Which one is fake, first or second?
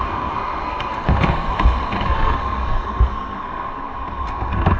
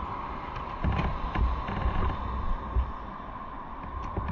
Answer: first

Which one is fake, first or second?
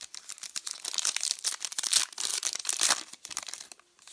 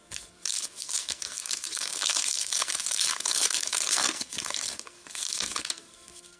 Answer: second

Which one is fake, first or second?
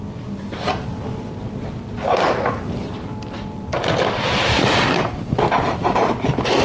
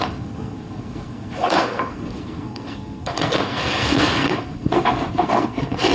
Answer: second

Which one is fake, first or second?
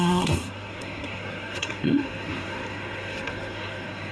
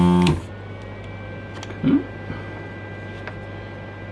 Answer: first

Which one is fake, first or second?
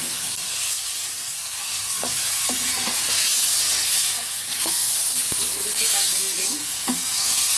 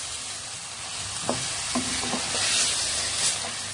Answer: first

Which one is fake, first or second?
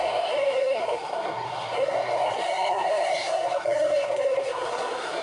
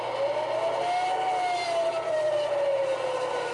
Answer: first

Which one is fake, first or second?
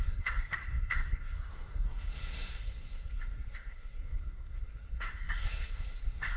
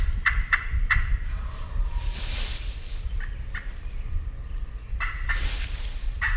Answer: first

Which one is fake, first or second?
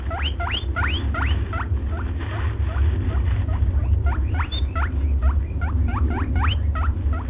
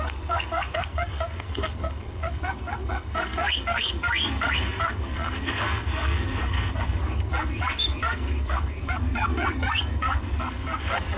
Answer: second